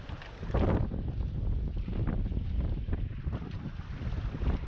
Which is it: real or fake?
real